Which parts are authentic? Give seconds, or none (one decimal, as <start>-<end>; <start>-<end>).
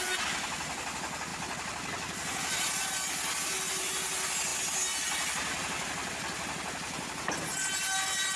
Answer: 0.0-8.4